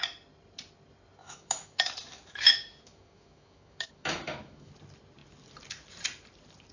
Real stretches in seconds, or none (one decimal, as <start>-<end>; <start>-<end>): 0.0-1.2; 4.7-6.7